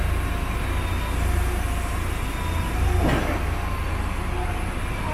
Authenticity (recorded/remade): recorded